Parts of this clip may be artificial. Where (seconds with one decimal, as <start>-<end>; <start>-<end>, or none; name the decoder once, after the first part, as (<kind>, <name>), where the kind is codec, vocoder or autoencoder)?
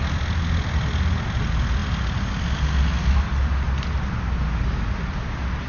none